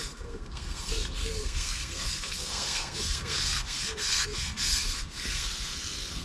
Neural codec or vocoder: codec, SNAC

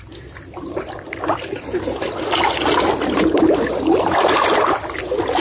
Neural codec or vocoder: none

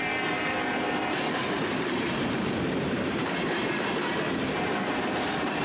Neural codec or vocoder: vocoder, BigVGAN v2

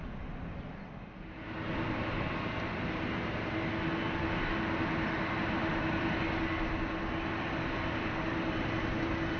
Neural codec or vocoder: none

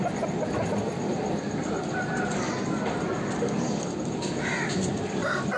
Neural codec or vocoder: none